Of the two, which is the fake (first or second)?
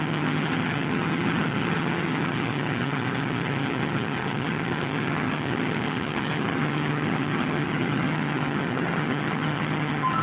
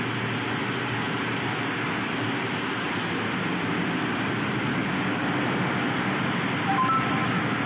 first